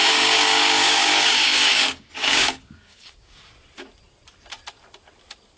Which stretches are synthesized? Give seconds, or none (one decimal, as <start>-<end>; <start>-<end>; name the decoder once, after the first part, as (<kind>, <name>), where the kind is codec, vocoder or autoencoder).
0.0-3.4 (codec, DAC)